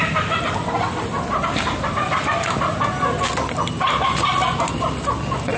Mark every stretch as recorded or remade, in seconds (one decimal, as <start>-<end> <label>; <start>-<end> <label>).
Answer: 0.0-5.6 recorded